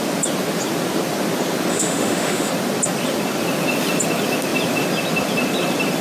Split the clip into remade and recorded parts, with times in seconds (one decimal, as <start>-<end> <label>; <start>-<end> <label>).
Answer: 0.0-1.7 recorded; 1.7-2.5 remade; 2.5-6.0 recorded